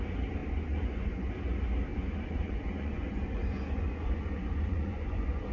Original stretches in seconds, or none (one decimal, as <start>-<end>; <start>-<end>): 0.0-0.4; 1.3-1.9